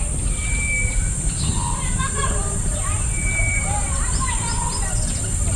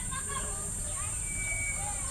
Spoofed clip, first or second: first